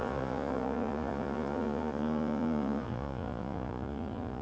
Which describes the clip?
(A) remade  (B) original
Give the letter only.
A